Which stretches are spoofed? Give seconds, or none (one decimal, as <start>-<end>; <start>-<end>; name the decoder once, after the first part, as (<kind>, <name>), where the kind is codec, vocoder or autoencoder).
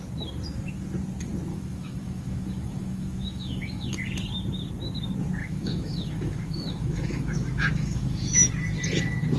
1.5-3.9 (autoencoder, DAC-VAE); 5.4-8.5